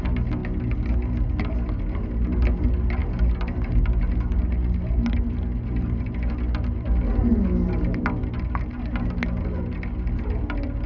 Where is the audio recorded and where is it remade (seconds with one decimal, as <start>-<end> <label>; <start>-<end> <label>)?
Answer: 0.0-10.9 recorded